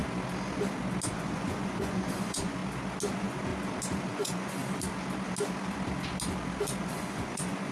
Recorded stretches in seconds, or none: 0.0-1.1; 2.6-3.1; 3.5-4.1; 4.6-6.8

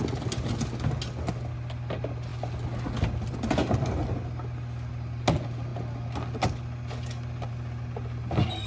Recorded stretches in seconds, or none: 0.0-8.7

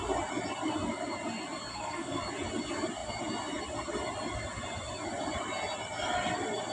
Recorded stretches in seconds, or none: 0.0-1.7; 2.2-6.7

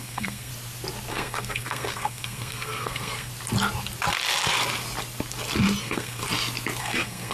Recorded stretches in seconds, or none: 0.5-1.1; 3.3-5.8; 6.2-6.8

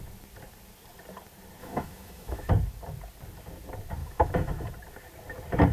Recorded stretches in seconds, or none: 0.0-1.6; 2.5-4.0; 4.7-5.7

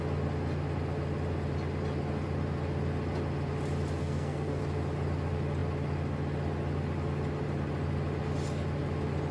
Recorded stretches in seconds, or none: 0.0-4.0; 4.6-9.3

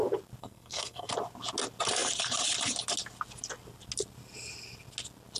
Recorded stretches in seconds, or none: 0.0-0.4; 1.1-5.4